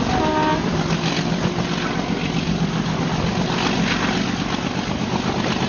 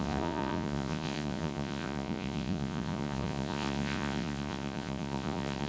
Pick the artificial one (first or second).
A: second